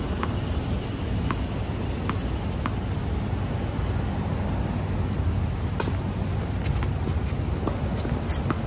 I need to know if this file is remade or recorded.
recorded